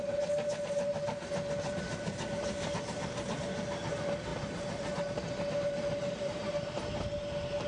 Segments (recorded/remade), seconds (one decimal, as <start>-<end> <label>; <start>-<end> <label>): 0.0-7.7 recorded